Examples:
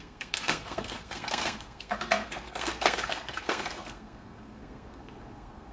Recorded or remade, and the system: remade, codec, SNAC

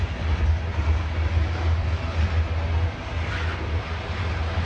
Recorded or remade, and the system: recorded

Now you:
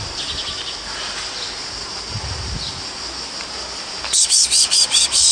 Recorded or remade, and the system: recorded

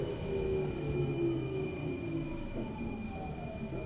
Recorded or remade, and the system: remade, autoencoder, DAC-VAE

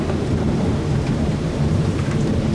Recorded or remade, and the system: remade, vocoder, BigVGAN v2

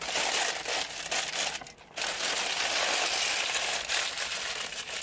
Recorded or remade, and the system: recorded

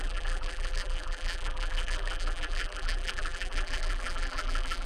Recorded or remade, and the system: remade, vocoder, BigVGAN v2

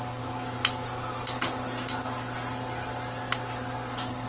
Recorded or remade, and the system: recorded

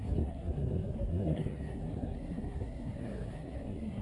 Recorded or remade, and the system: remade, codec, SNAC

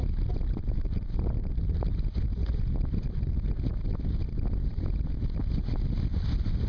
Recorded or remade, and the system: recorded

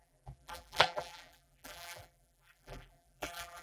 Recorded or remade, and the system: remade, vocoder, BigVGAN v2